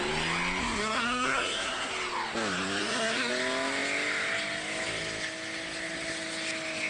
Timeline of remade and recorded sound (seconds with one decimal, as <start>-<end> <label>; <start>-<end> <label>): 0.0-0.6 recorded; 0.6-1.9 remade; 1.9-2.8 recorded; 2.8-3.3 remade; 3.3-6.9 recorded